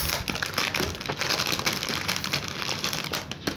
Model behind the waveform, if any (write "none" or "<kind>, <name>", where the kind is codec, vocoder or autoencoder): none